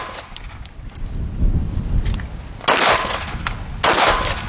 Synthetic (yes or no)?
no